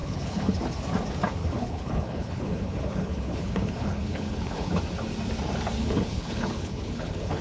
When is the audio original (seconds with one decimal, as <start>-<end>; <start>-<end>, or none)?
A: 0.6-1.4; 4.8-5.8